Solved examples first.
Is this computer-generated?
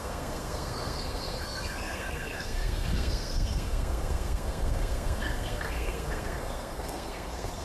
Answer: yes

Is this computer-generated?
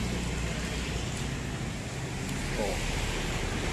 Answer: no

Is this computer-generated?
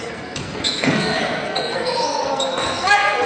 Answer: yes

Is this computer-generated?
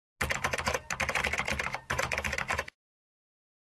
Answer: no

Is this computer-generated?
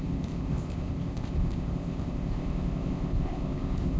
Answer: yes